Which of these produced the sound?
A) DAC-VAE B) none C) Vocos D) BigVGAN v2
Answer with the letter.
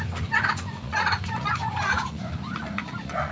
C